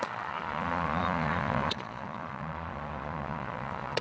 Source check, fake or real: fake